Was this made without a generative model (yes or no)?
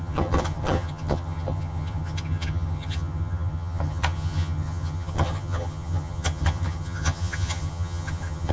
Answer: no